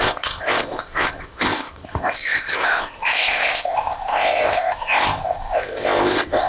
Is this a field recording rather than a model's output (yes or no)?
no